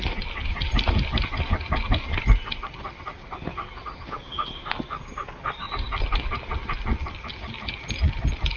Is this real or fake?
real